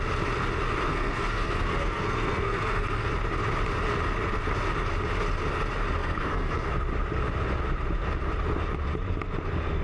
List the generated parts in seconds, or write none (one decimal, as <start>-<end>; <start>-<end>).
0.9-3.1; 6.0-6.7